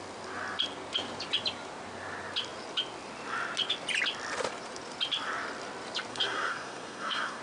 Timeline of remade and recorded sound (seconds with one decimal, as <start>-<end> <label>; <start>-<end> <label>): 0.0-6.1 recorded; 6.1-7.4 remade